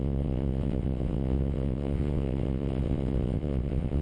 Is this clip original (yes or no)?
no